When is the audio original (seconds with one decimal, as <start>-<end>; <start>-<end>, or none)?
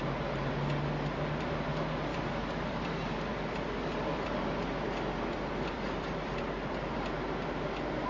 0.0-2.1; 7.0-8.1